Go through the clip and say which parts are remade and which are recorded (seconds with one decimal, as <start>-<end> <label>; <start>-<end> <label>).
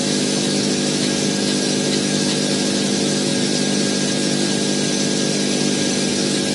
0.0-3.3 remade; 3.3-6.1 recorded; 6.1-6.5 remade